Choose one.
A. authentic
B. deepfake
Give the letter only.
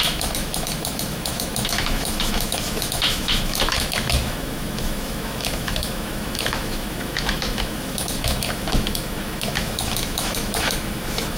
B